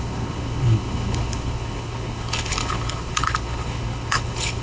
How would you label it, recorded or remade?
remade